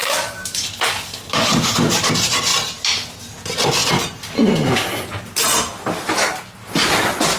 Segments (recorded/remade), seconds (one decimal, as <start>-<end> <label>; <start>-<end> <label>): 0.0-2.1 remade; 2.1-7.4 recorded